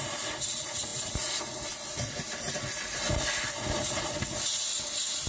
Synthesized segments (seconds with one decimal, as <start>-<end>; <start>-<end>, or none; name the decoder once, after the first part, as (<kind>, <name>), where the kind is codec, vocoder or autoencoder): none